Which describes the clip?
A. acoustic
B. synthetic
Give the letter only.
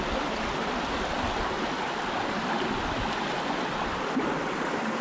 A